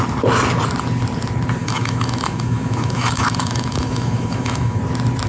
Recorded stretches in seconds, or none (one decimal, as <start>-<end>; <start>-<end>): 0.0-1.6; 4.8-5.3